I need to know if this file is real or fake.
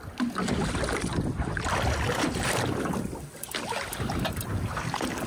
real